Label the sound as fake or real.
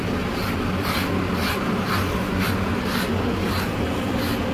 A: real